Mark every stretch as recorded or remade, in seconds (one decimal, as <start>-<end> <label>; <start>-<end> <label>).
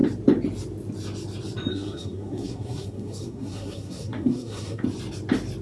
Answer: 0.0-1.7 recorded; 1.7-4.8 remade; 4.8-5.6 recorded